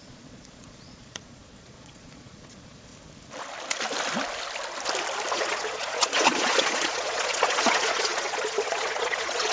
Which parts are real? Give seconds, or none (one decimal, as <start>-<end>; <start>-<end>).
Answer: 2.9-5.3